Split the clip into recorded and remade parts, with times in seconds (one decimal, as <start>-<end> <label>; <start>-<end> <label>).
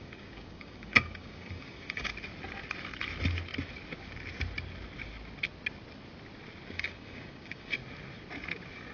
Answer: 0.0-2.1 remade; 2.1-6.7 recorded; 6.7-7.8 remade; 7.8-8.9 recorded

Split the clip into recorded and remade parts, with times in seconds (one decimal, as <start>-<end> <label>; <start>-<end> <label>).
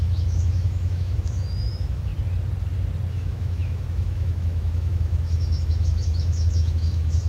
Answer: 0.0-2.1 remade; 2.1-3.1 recorded; 3.1-7.3 remade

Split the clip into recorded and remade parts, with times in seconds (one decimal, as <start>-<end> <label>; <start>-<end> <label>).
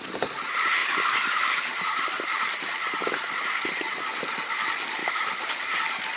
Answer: 0.0-0.8 recorded; 0.8-2.0 remade; 2.0-5.0 recorded; 5.0-5.5 remade; 5.5-6.2 recorded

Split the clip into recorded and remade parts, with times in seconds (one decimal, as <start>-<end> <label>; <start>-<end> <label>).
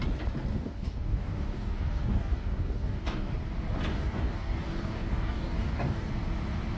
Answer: 0.0-0.5 recorded; 0.5-3.3 remade; 3.3-3.9 recorded; 3.9-6.1 remade; 6.1-6.8 recorded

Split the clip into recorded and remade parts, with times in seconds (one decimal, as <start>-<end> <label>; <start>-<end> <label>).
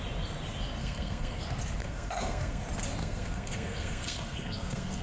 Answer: 0.0-0.8 recorded; 0.8-1.4 remade; 1.4-1.8 recorded; 1.8-2.6 remade; 2.6-3.0 recorded; 3.0-5.0 remade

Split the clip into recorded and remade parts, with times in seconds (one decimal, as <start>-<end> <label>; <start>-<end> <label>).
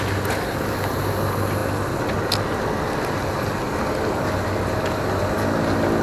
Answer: 0.0-6.0 recorded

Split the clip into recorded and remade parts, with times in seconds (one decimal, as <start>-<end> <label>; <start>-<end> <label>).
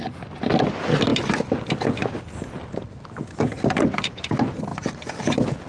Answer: 0.0-5.7 recorded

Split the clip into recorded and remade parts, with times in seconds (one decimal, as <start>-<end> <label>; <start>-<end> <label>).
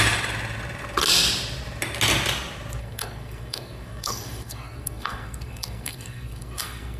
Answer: 0.0-2.8 recorded; 2.8-7.0 remade